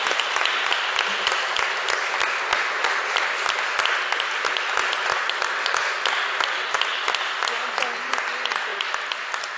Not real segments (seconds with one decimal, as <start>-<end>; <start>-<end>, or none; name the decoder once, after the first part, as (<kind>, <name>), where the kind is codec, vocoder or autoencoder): none